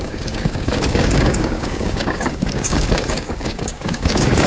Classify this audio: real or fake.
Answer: fake